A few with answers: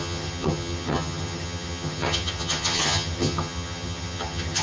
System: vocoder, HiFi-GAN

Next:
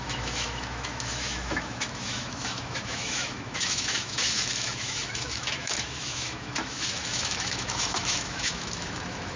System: autoencoder, DAC-VAE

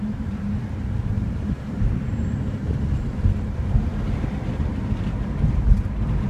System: vocoder, BigVGAN v2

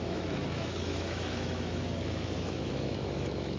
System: autoencoder, DAC-VAE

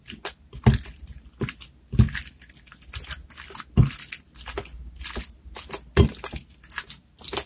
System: none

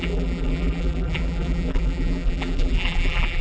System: vocoder, BigVGAN v2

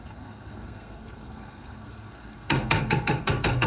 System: codec, SNAC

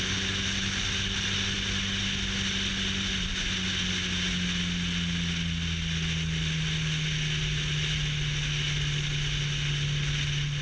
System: none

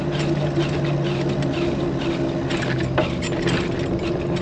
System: none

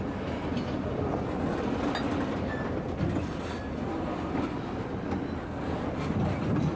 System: none